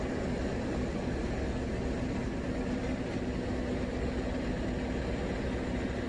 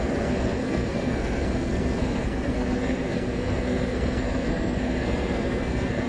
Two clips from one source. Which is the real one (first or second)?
first